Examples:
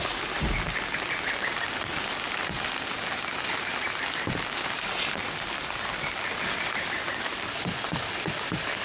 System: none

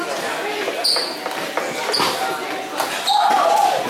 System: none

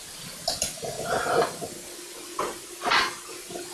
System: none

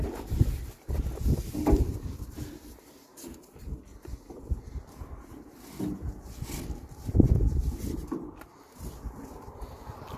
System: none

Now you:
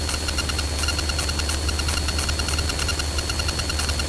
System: none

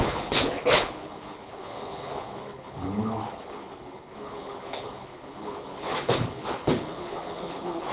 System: codec, HILCodec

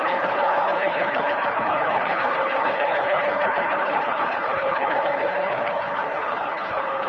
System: codec, HILCodec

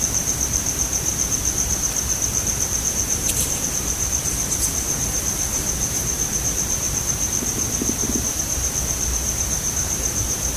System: vocoder, BigVGAN v2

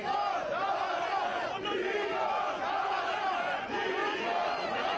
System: vocoder, Vocos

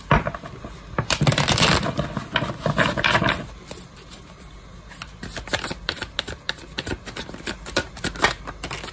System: none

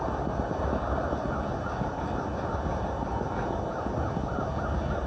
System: none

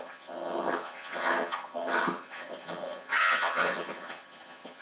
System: vocoder, HiFi-GAN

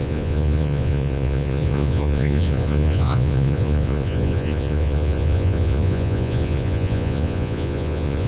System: vocoder, Vocos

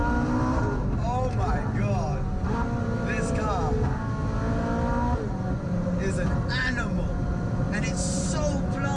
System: none